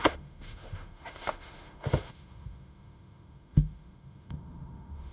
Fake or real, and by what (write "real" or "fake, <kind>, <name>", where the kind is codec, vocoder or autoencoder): fake, autoencoder, DAC-VAE